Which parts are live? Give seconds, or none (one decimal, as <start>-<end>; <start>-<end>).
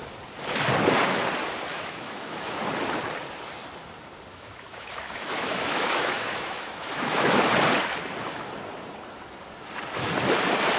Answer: 0.0-1.7; 2.6-4.3; 7.4-10.8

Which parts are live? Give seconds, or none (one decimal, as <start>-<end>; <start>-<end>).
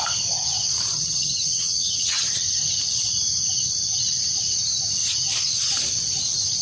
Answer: 0.0-0.9; 2.3-6.6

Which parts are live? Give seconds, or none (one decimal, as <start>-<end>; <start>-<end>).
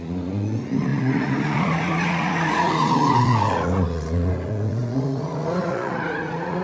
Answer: none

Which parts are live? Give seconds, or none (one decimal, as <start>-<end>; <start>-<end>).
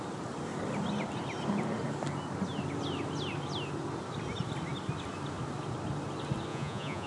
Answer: 0.0-6.5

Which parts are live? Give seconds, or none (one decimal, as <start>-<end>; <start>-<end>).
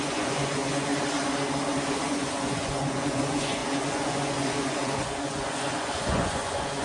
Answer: 0.9-1.9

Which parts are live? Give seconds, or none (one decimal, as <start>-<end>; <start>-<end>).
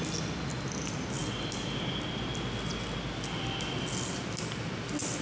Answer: 0.0-5.2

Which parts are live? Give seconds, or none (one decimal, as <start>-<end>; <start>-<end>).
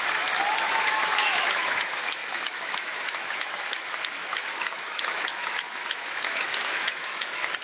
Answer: none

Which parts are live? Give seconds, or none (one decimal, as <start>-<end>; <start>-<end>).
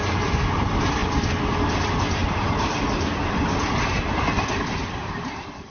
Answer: 0.0-1.0; 1.6-5.7